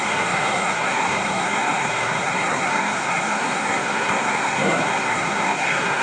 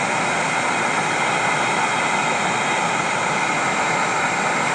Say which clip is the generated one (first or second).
first